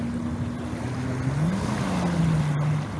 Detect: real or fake real